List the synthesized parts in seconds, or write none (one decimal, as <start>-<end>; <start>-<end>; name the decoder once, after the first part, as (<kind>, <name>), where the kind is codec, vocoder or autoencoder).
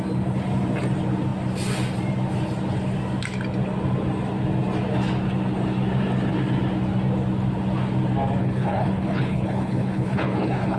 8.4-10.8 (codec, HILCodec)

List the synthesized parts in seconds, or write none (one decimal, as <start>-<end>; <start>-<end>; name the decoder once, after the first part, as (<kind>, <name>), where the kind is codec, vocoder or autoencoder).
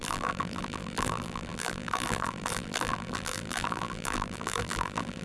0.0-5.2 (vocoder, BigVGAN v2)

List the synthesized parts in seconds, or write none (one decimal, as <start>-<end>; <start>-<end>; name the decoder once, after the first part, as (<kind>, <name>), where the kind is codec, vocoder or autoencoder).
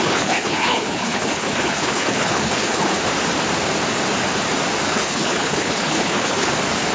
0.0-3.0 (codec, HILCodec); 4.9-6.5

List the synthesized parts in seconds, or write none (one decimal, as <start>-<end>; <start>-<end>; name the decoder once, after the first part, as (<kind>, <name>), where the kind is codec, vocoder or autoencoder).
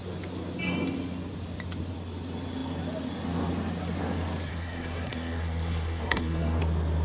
4.5-6.6 (codec, SNAC)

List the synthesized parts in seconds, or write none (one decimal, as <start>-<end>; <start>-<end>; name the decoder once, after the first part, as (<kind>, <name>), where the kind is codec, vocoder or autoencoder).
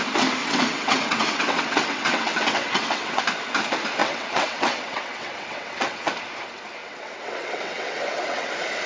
0.4-3.2 (vocoder, WaveNeXt); 4.0-6.1; 6.8-8.5